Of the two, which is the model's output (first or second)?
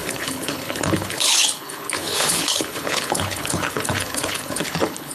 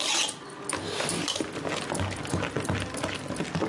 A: first